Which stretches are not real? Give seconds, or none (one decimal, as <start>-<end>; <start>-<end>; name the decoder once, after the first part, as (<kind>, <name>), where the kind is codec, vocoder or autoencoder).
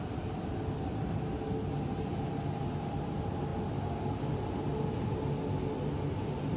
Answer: none